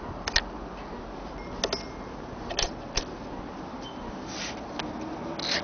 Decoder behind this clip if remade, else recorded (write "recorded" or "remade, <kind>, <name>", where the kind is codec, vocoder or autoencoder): recorded